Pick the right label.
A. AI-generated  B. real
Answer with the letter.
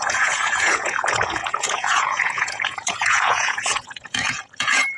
A